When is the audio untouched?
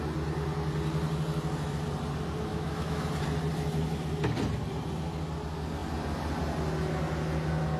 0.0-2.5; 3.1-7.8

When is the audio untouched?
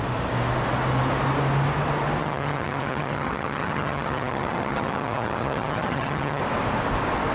0.0-2.2; 6.4-7.3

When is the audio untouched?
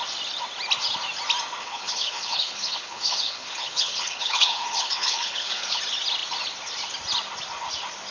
0.0-1.6; 5.8-8.1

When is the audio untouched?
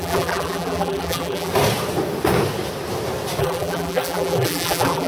1.5-3.4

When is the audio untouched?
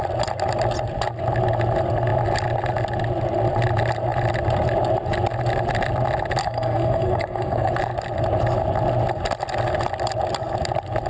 0.0-6.4; 7.7-11.1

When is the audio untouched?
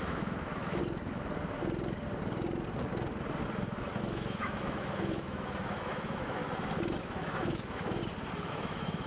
0.8-4.0; 6.4-7.0; 8.0-8.5